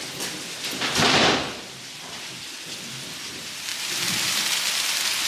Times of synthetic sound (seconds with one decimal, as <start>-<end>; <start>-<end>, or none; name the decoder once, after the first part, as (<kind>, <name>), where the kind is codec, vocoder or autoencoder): 0.0-5.3 (vocoder, BigVGAN v2)